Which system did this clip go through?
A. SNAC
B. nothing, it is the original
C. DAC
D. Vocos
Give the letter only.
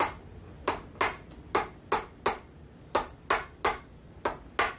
B